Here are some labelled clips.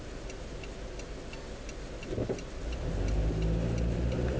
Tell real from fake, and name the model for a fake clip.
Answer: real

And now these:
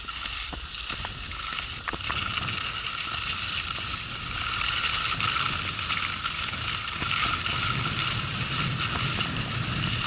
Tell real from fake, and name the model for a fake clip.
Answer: real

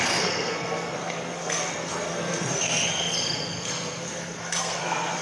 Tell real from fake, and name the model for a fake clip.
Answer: fake, codec, SNAC